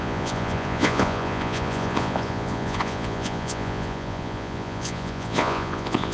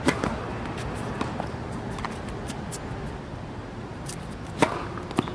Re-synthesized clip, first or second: first